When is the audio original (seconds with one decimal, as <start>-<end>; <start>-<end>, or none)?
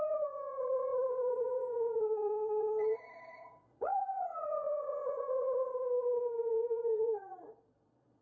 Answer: 5.7-6.5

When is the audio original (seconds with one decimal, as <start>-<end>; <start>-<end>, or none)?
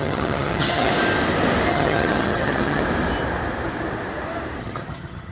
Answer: 0.9-1.7; 2.8-4.6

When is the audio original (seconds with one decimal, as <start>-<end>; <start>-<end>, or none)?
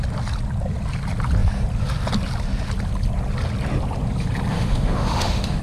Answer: 0.0-4.5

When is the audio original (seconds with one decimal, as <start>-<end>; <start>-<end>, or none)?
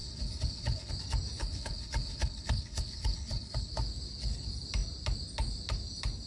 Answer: 0.9-1.4; 3.7-6.3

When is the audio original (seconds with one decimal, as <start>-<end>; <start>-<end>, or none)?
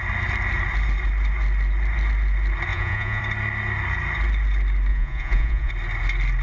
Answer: 0.0-2.7; 3.2-4.9; 5.7-6.4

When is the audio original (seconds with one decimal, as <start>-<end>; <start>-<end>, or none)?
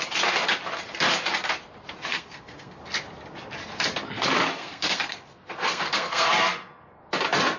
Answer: 0.0-2.1; 2.8-4.6; 6.3-7.6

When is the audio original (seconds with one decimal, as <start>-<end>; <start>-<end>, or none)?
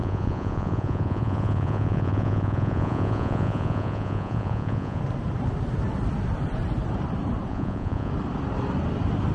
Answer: 5.0-7.5; 8.1-9.3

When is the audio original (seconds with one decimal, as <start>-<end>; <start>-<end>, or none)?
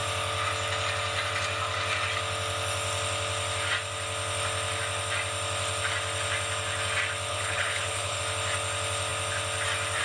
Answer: 0.0-7.3; 8.2-10.0